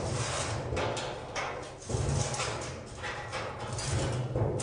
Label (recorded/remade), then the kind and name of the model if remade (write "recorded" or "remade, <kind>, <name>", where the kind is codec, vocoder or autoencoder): recorded